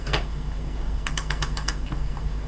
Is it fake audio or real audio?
fake